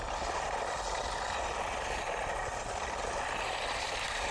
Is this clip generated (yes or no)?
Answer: no